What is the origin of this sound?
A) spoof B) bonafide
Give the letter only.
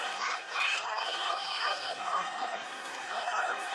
A